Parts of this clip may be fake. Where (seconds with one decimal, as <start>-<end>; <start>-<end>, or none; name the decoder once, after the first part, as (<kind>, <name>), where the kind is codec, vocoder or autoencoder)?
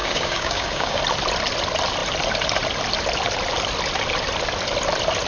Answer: 0.0-1.0 (codec, DAC)